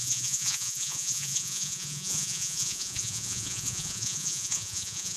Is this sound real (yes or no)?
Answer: no